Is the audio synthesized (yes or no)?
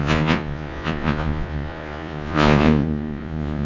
yes